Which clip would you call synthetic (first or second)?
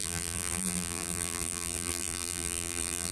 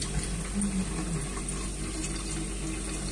first